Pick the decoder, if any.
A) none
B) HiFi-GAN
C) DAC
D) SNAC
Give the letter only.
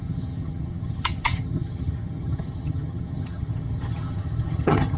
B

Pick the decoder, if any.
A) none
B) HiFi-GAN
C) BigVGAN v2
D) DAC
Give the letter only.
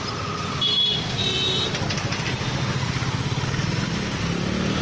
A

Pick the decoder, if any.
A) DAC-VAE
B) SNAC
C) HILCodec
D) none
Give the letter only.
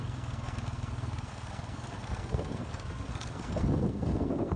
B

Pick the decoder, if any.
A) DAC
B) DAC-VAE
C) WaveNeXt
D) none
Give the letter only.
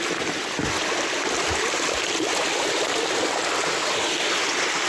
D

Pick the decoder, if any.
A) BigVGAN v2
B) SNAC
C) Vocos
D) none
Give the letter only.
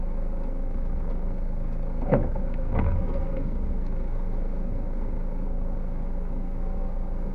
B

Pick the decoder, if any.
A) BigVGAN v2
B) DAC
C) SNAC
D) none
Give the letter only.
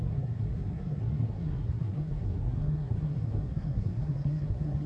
C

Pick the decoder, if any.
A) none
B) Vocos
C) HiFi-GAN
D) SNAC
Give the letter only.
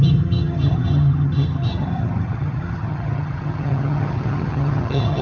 C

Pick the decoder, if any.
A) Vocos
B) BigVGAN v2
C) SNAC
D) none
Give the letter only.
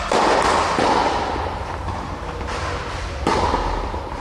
D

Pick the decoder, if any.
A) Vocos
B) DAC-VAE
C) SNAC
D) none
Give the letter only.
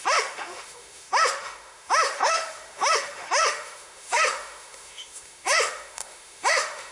B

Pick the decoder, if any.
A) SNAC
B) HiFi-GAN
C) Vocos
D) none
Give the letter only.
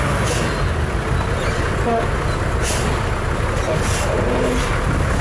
D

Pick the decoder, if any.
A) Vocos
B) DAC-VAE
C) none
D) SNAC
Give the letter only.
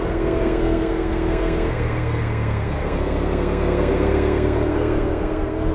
D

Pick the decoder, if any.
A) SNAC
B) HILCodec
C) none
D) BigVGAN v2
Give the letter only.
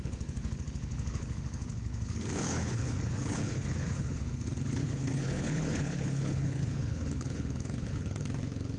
B